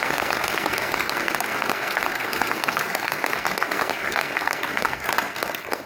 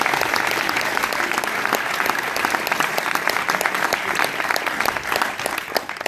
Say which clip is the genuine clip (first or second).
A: second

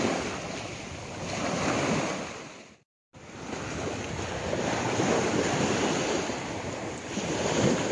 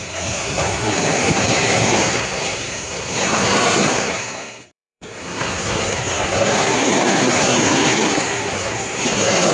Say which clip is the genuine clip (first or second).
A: first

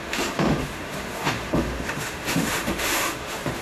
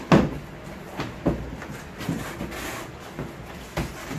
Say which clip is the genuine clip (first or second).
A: second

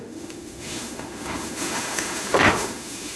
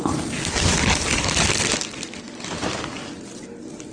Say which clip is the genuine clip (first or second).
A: second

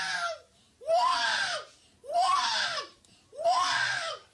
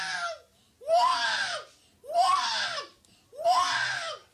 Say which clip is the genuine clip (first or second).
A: second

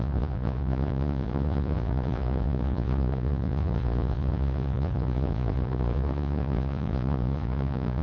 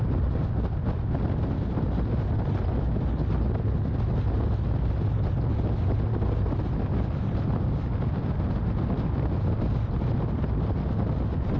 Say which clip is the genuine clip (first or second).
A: second